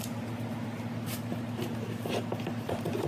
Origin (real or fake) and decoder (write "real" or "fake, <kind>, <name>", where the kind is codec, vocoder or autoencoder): real